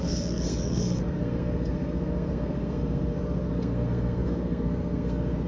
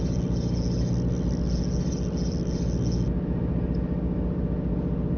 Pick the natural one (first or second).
second